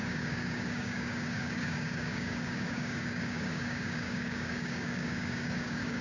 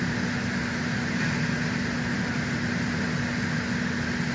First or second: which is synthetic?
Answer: first